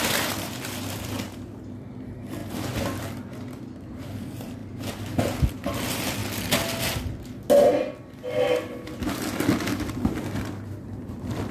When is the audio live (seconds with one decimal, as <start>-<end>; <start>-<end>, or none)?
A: 4.6-5.5; 6.2-10.8